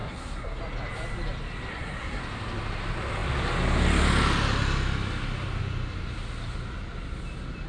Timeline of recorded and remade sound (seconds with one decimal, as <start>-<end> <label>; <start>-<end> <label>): 0.0-0.6 remade; 0.6-1.7 recorded; 1.7-2.2 remade; 2.2-7.7 recorded